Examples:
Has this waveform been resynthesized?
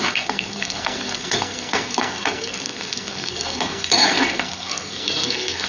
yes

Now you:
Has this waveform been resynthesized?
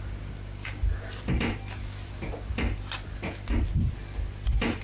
no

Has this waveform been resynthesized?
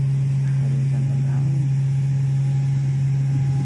no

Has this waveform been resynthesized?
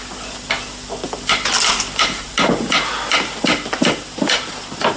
no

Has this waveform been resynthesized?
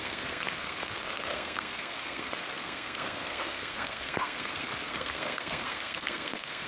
yes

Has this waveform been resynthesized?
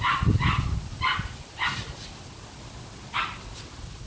no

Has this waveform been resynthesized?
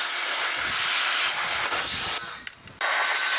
no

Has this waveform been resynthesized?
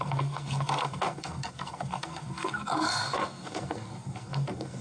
yes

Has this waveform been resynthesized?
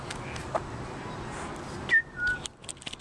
no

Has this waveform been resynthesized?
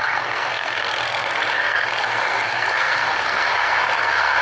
yes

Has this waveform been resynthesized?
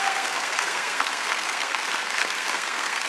yes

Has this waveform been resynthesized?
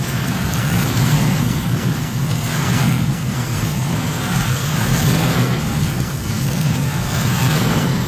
yes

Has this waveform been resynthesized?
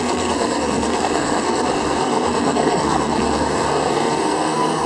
yes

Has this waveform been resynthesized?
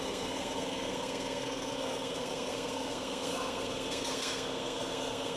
yes